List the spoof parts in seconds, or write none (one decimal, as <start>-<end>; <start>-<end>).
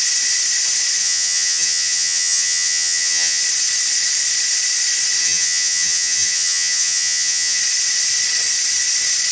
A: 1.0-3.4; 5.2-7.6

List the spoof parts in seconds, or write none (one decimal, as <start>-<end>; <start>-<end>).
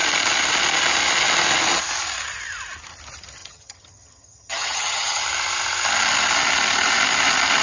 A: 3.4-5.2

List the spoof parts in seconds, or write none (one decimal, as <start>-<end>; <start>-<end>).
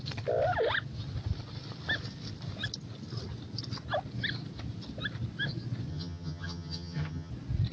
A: 5.9-7.3